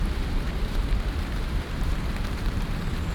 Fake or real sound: fake